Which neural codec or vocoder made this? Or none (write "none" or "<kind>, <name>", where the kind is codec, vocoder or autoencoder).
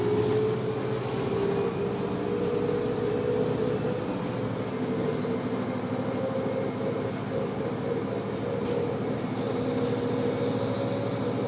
none